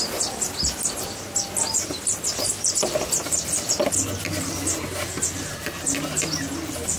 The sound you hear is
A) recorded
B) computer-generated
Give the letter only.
A